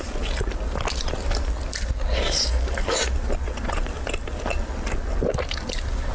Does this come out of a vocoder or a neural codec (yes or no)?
no